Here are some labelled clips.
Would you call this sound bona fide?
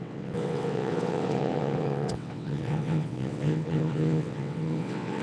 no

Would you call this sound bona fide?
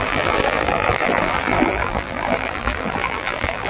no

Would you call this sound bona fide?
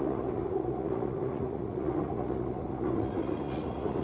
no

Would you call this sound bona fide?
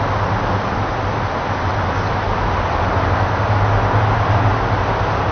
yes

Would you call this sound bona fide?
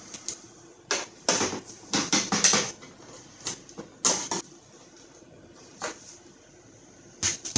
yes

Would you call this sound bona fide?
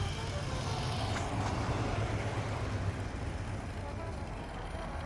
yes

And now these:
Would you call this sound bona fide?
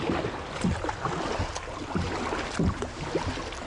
yes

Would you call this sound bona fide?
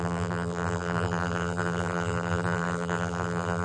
no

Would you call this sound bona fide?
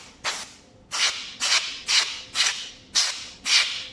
yes